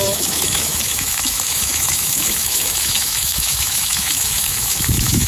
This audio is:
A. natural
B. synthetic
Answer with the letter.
B